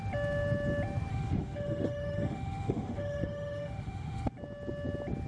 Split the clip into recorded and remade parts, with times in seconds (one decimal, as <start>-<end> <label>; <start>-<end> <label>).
0.0-1.1 recorded; 1.1-4.3 remade; 4.3-5.3 recorded

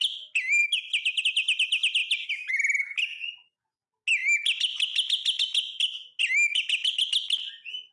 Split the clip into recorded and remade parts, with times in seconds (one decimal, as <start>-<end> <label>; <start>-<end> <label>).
0.0-0.6 recorded; 0.6-1.2 remade; 1.2-7.9 recorded

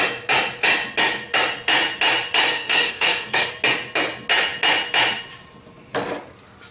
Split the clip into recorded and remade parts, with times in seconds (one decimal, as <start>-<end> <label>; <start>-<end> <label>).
0.0-2.5 recorded; 2.5-3.5 remade; 3.5-6.7 recorded

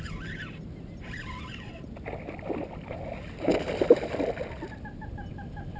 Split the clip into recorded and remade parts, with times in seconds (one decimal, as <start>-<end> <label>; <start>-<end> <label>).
0.0-5.8 recorded

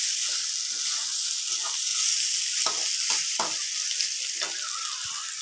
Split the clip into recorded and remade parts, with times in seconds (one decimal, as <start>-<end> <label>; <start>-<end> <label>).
0.0-1.9 recorded; 1.9-4.3 remade; 4.3-5.4 recorded

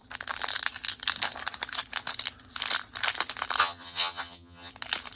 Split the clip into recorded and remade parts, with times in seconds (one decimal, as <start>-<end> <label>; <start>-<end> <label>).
0.0-3.6 recorded; 3.6-4.7 remade; 4.7-5.2 recorded

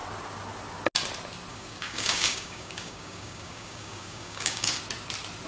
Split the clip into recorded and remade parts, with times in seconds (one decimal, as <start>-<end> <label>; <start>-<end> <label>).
0.0-1.5 recorded; 1.5-4.8 remade; 4.8-5.5 recorded

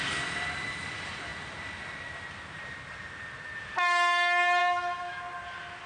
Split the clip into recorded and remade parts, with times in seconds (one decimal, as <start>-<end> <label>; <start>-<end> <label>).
0.0-4.6 recorded; 4.6-5.2 remade; 5.2-5.9 recorded